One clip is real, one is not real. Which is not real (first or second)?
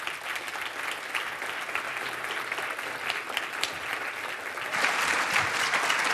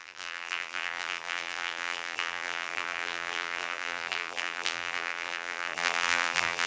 second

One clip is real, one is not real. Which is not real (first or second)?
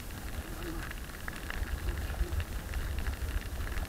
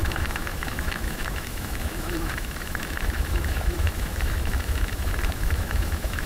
second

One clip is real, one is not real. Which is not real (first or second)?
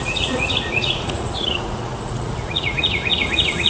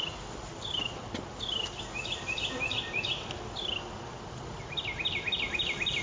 first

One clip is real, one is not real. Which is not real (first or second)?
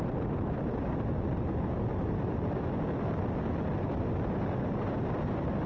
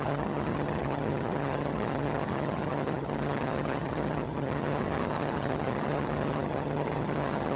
second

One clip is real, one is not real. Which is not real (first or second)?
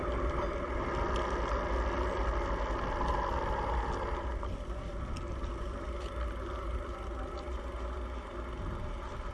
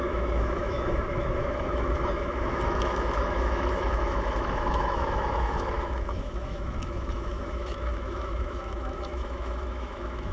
second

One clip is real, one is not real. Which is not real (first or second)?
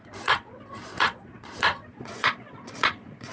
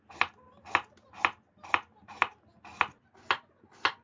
first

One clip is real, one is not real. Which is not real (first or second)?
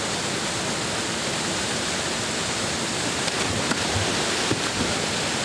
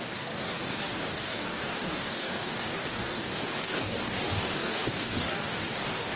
second